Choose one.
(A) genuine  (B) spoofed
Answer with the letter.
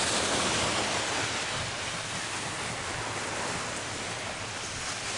A